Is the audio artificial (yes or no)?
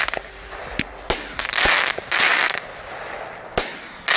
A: no